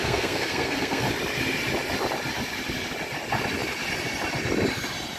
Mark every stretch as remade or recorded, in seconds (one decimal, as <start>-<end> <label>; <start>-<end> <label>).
0.0-1.1 remade; 1.1-5.2 recorded